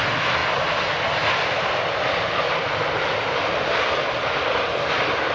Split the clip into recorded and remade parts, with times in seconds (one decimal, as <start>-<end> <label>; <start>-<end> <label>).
0.0-5.3 recorded